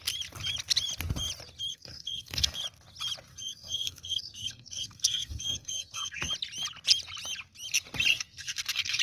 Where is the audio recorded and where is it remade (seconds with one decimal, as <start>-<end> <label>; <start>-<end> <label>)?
0.0-1.7 recorded; 1.7-2.6 remade; 2.6-3.3 recorded; 3.3-6.3 remade; 6.3-8.1 recorded; 8.1-9.0 remade